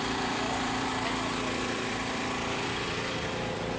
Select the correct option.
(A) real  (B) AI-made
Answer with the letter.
B